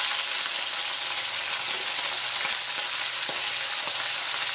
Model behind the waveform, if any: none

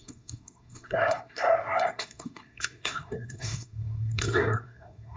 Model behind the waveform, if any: codec, SNAC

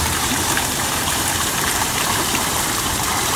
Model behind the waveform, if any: vocoder, BigVGAN v2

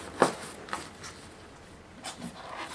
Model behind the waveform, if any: none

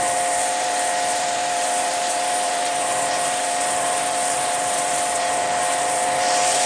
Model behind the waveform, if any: vocoder, BigVGAN v2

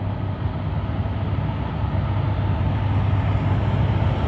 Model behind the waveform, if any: none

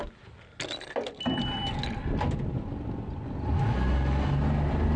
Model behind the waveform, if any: none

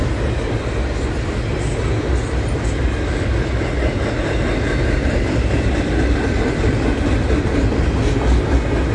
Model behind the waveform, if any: none